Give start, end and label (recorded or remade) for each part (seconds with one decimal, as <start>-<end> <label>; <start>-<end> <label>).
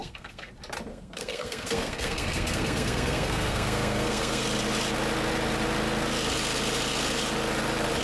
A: 0.0-0.5 remade; 0.5-0.9 recorded; 0.9-4.4 remade; 4.4-8.0 recorded